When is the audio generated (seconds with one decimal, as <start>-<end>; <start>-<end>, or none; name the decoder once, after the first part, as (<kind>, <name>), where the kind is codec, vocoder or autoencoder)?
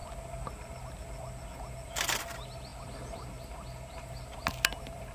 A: none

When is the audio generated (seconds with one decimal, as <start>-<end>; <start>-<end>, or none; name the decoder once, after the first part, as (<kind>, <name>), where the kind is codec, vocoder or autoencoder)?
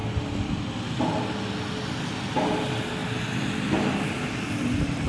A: none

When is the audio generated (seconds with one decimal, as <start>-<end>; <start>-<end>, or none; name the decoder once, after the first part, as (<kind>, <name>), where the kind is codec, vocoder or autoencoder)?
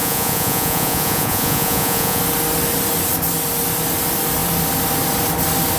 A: 0.0-2.2 (vocoder, Vocos)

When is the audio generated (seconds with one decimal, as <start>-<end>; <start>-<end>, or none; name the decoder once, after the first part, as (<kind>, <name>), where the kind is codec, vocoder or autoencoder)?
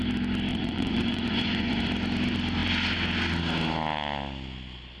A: 0.5-1.9 (vocoder, Vocos)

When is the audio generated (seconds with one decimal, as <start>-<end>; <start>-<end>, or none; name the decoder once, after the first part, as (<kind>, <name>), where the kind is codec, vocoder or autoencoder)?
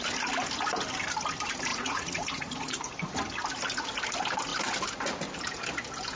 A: 1.7-3.2 (vocoder, Vocos)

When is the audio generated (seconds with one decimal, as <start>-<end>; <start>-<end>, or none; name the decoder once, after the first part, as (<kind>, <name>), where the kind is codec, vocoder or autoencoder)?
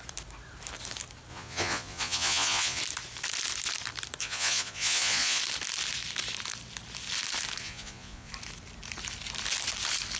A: 1.3-2.8 (vocoder, Vocos); 4.2-5.4; 7.6-8.3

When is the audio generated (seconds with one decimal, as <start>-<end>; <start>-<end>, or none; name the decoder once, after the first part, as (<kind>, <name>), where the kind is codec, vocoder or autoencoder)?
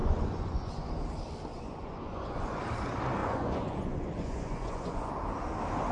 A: 0.0-0.9 (vocoder, Vocos); 1.5-2.6; 3.2-5.1